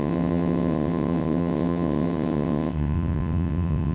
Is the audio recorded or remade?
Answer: remade